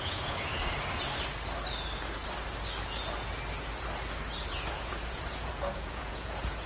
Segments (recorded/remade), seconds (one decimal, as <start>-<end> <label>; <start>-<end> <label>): 0.0-0.5 remade; 0.5-4.5 recorded; 4.5-6.7 remade